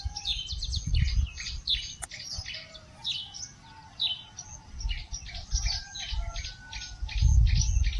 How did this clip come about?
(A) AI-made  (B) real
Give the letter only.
B